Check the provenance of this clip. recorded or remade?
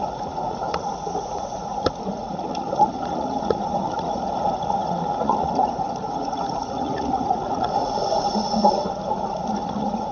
remade